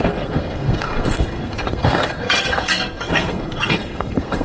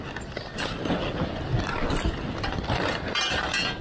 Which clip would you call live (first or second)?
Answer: second